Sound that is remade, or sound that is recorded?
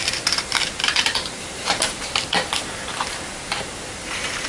remade